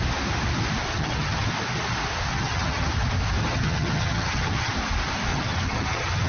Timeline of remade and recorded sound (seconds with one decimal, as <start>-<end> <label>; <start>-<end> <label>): 0.0-0.9 recorded; 0.9-1.5 remade; 1.5-2.3 recorded; 2.3-2.9 remade; 2.9-3.4 recorded; 3.4-4.7 remade; 4.7-5.3 recorded; 5.3-6.3 remade